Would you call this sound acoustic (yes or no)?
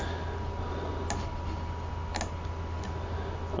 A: yes